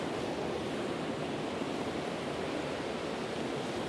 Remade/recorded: recorded